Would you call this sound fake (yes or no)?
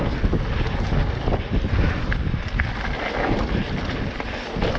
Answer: no